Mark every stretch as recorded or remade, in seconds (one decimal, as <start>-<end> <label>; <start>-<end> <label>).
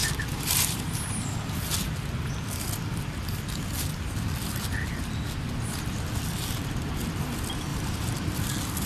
0.0-1.2 remade; 1.2-7.7 recorded; 7.7-8.4 remade; 8.4-8.9 recorded